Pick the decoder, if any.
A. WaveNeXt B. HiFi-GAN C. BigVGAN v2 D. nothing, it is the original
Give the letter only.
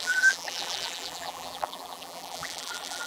C